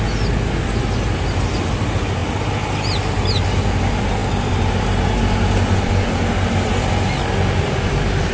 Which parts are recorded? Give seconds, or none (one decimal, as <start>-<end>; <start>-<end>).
0.0-8.3